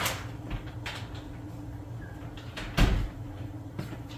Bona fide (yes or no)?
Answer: yes